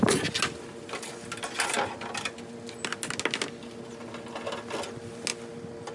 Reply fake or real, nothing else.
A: real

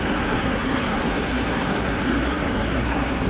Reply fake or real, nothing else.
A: fake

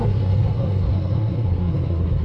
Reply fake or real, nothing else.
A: fake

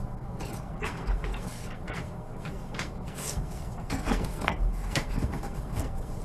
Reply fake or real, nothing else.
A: fake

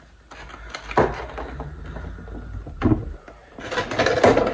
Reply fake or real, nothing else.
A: real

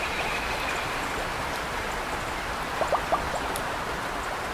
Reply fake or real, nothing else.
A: real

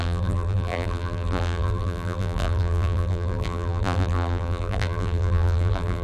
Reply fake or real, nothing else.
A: fake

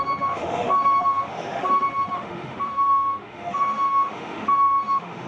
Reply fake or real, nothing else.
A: fake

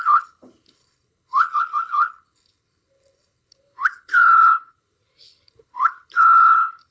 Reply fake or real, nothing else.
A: fake